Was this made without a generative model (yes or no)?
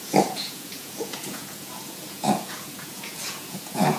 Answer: no